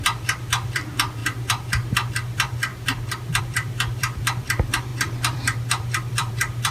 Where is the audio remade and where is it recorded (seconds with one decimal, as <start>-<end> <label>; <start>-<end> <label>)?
0.0-2.7 remade; 2.7-3.4 recorded; 3.4-6.7 remade